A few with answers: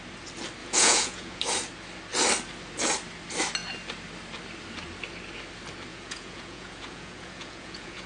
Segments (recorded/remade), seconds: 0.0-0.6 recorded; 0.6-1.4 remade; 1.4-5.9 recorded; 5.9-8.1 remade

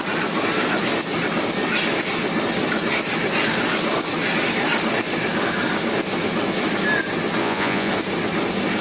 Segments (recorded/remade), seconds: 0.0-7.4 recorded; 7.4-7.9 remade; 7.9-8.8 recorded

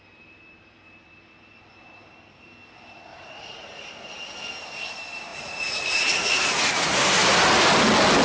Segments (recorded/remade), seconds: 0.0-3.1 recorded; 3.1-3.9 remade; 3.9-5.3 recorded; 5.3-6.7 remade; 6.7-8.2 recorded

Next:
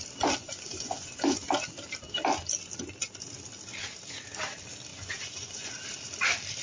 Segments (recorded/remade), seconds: 0.0-0.4 recorded; 0.4-1.4 remade; 1.4-4.9 recorded; 4.9-5.7 remade; 5.7-6.6 recorded

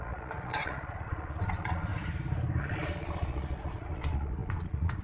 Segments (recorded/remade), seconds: 0.0-1.9 remade; 1.9-2.6 recorded; 2.6-5.0 remade

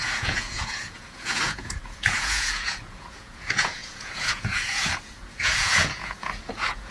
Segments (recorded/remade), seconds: 0.0-6.9 remade